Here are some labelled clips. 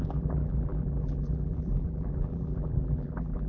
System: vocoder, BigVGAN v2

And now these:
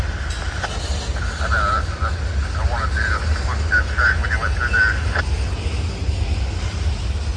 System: none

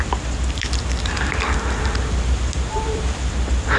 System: vocoder, BigVGAN v2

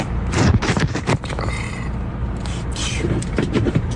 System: vocoder, BigVGAN v2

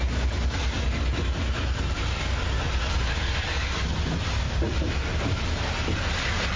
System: none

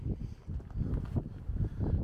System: none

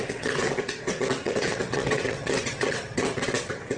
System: vocoder, WaveNeXt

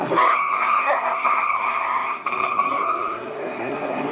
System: codec, SNAC